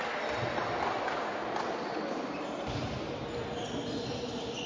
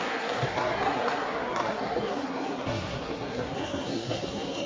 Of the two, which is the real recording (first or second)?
first